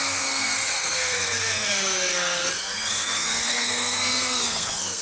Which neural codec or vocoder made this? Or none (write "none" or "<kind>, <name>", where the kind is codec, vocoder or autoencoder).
codec, SNAC